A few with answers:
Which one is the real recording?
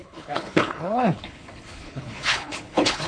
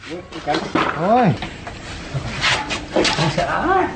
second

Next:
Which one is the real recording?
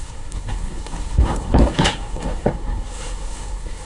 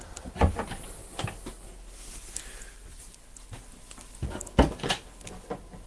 second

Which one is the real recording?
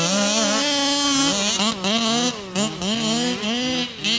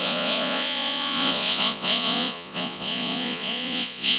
first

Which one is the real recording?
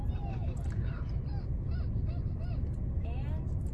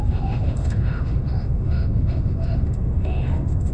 first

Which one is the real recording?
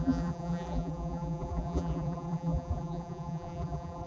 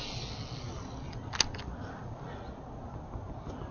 second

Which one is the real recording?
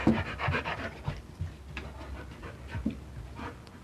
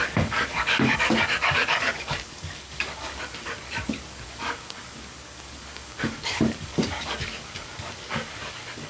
first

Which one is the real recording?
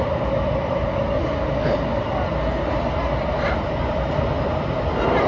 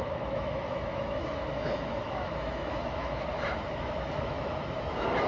first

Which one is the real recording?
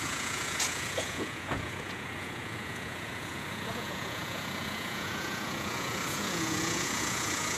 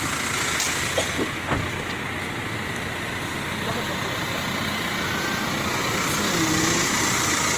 second